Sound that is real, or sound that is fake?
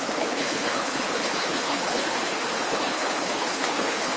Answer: fake